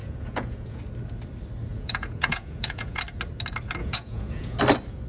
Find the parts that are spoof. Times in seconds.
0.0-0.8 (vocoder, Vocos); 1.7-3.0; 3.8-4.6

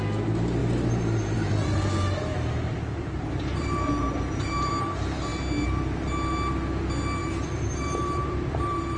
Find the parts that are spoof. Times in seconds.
0.6-4.7 (vocoder, BigVGAN v2); 7.2-9.0

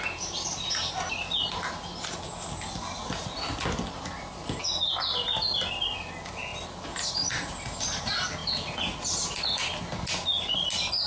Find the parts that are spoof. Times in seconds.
none

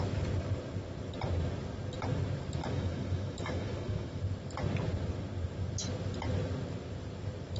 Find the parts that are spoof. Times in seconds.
2.6-4.2 (autoencoder, DAC-VAE)